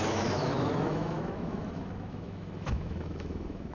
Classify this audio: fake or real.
fake